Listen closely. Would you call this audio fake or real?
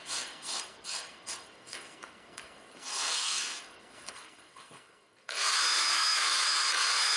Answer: fake